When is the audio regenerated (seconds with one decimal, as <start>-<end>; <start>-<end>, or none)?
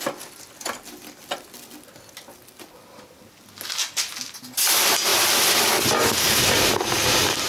none